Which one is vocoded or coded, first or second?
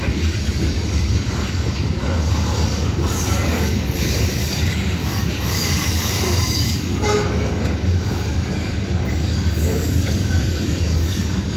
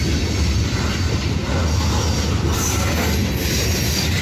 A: first